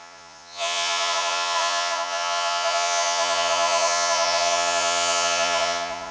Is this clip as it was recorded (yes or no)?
no